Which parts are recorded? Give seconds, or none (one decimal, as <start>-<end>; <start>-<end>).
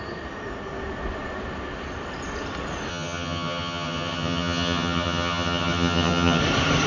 0.0-2.9; 6.4-6.9